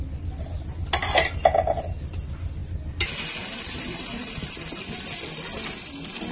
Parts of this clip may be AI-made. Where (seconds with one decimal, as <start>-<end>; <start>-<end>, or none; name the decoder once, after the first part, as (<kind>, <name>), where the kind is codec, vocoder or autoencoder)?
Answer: none